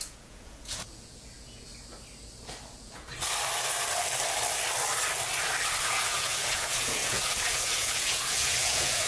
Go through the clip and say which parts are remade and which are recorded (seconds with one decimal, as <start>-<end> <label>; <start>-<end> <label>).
0.0-1.7 remade; 1.7-2.7 recorded; 2.7-3.1 remade; 3.1-5.8 recorded; 5.8-9.1 remade